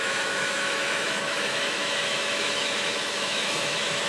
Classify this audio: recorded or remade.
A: remade